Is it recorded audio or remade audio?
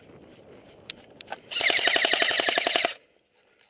remade